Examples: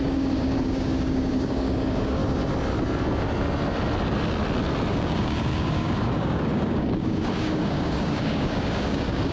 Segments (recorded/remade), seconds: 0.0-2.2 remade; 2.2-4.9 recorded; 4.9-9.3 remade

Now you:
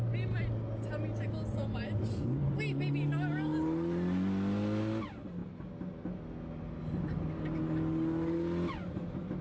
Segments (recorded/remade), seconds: 0.0-9.4 recorded

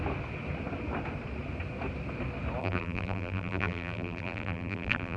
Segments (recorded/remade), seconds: 0.0-2.6 recorded; 2.6-5.2 remade

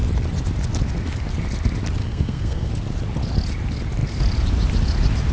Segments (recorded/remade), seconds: 0.0-2.0 recorded; 2.0-2.7 remade; 2.7-5.3 recorded

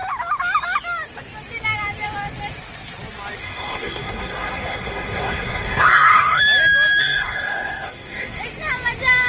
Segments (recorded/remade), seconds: 0.0-3.4 recorded; 3.4-6.4 remade; 6.4-7.0 recorded; 7.0-8.4 remade; 8.4-9.3 recorded

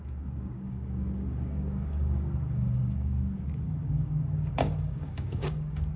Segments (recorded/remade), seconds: 0.0-6.0 remade

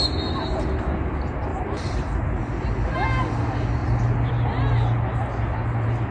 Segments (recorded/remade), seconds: 0.0-1.5 recorded; 1.5-2.4 remade; 2.4-6.1 recorded

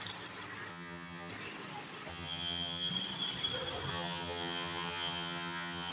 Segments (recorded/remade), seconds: 0.0-0.7 recorded; 0.7-1.3 remade; 1.3-2.1 recorded; 2.1-2.9 remade; 2.9-3.9 recorded; 3.9-5.9 remade